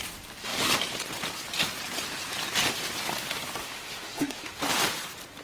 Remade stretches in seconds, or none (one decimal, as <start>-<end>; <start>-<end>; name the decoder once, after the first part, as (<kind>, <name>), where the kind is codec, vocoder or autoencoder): 3.6-4.6 (autoencoder, DAC-VAE)

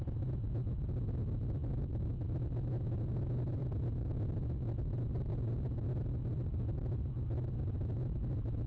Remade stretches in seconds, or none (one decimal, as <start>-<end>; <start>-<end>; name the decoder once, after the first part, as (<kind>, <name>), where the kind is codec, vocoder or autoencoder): none

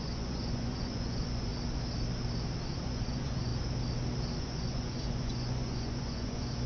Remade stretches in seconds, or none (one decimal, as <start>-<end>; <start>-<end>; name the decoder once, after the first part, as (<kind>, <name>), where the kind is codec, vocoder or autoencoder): 0.0-1.5 (vocoder, Vocos); 2.7-3.5; 4.4-6.7